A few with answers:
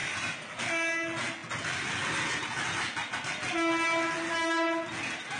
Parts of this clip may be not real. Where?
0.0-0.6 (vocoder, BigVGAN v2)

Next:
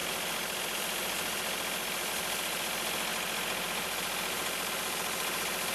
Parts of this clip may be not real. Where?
none

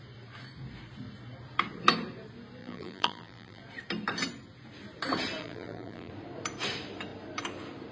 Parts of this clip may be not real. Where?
2.6-3.6 (vocoder, BigVGAN v2); 5.4-6.1

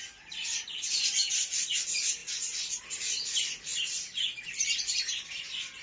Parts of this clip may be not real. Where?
3.7-4.5 (vocoder, BigVGAN v2)

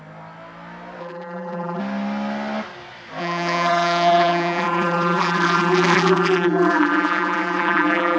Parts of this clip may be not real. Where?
1.0-1.8 (vocoder, BigVGAN v2); 3.2-8.2

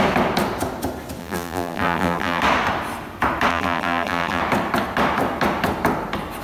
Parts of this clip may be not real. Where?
1.2-2.4 (vocoder, BigVGAN v2); 3.5-4.4

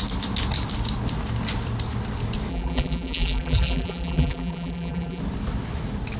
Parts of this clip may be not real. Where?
2.5-5.2 (vocoder, BigVGAN v2)

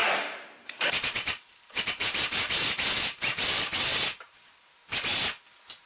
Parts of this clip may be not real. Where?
0.0-3.5 (vocoder, BigVGAN v2); 3.9-4.5